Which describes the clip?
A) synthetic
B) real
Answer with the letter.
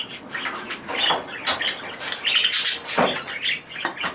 B